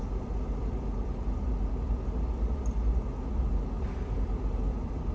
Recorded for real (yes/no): yes